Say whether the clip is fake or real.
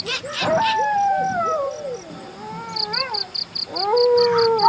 real